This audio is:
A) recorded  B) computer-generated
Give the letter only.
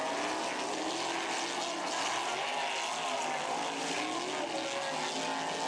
A